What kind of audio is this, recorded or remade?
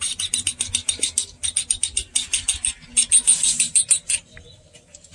recorded